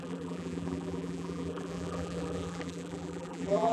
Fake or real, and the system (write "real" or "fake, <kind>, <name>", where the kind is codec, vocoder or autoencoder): fake, vocoder, BigVGAN v2